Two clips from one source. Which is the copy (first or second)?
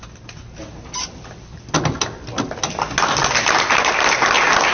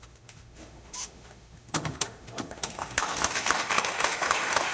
second